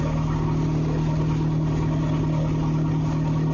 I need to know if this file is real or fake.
real